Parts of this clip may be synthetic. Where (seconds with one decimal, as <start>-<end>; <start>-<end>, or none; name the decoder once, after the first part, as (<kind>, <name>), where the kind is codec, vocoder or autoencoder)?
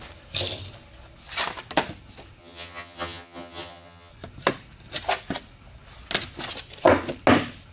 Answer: 2.4-4.1 (vocoder, HiFi-GAN)